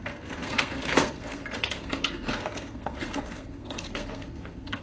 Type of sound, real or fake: fake